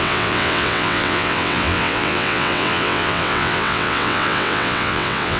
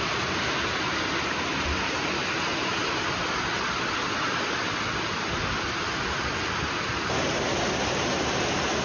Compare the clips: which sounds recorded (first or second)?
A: second